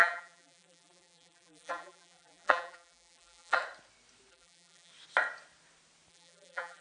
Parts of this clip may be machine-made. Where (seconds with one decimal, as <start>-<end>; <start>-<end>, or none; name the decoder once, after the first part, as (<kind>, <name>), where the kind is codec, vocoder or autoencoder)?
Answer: 0.0-3.6 (vocoder, BigVGAN v2); 4.3-4.9; 6.1-6.8